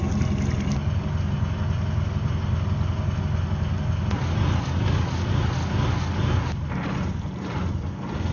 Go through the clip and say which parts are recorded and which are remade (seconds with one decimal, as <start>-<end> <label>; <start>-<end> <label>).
0.0-8.3 recorded

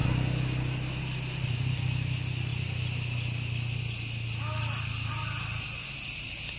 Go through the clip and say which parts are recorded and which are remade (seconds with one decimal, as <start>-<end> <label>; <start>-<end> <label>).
0.0-6.6 recorded

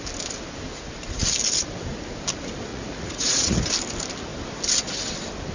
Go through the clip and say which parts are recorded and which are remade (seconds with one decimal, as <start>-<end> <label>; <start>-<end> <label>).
0.0-2.7 recorded; 2.7-3.6 remade; 3.6-5.5 recorded

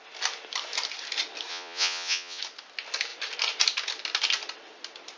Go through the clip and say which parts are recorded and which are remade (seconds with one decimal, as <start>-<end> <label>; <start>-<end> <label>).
0.0-1.5 recorded; 1.5-2.4 remade; 2.4-5.2 recorded

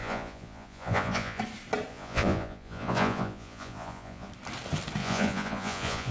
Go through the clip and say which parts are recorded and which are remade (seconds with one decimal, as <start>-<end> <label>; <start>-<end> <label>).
0.0-1.4 remade; 1.4-1.9 recorded; 1.9-4.3 remade; 4.3-5.0 recorded; 5.0-6.1 remade